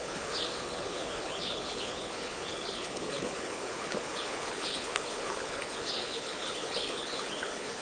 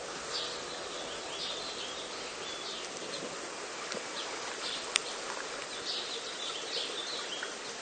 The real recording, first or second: second